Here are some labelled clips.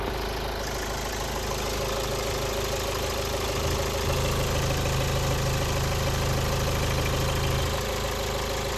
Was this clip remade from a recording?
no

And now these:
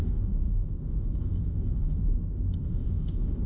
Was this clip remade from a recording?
yes